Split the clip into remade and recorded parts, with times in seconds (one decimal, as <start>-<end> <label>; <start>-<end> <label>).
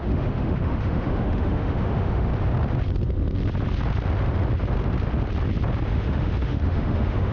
0.0-2.3 remade; 2.3-5.9 recorded; 5.9-7.3 remade